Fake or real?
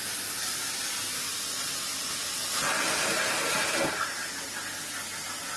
real